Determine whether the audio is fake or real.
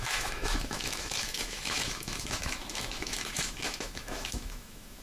fake